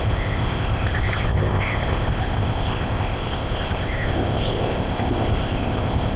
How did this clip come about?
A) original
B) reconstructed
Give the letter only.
B